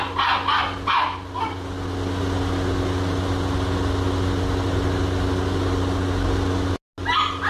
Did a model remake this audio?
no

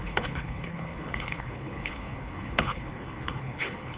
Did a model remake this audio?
yes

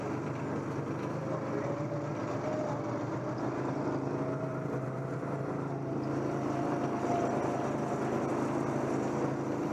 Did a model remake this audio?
no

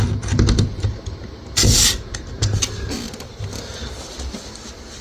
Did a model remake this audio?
no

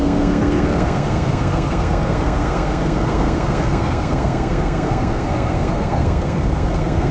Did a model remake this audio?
yes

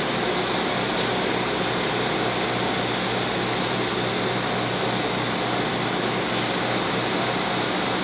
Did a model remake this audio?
no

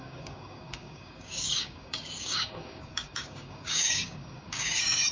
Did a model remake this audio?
yes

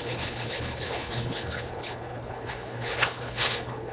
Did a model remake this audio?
yes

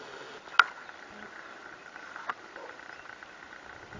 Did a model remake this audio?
no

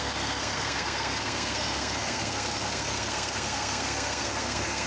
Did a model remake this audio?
yes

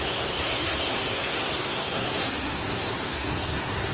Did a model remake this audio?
yes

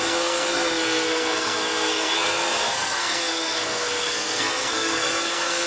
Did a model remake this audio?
yes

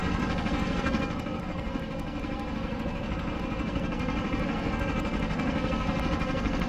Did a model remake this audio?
yes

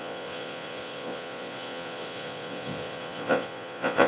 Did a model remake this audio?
yes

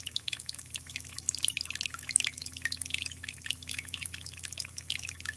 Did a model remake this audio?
yes